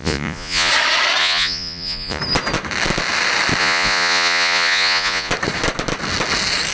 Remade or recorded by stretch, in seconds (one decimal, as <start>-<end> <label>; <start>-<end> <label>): 0.0-0.7 remade; 0.7-1.2 recorded; 1.2-2.2 remade; 2.2-3.6 recorded; 3.6-5.3 remade; 5.3-6.7 recorded